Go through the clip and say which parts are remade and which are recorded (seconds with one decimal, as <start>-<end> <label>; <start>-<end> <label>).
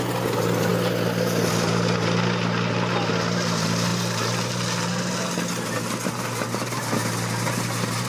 0.0-8.1 recorded